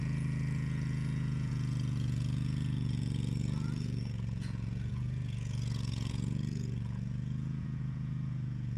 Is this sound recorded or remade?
remade